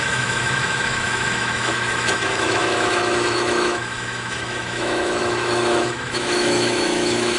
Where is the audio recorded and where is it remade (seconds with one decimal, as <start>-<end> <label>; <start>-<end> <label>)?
0.0-7.4 remade